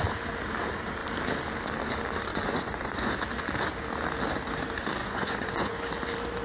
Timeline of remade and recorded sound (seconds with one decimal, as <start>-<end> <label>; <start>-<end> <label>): 0.0-2.3 recorded; 2.3-3.1 remade; 3.1-5.0 recorded; 5.0-5.7 remade; 5.7-6.4 recorded